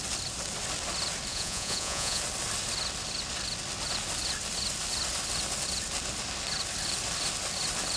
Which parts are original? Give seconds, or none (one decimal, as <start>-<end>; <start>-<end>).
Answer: 0.0-1.3; 2.2-8.0